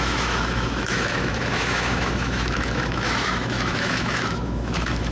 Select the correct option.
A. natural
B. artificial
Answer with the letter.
B